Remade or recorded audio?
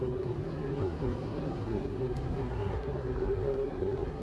remade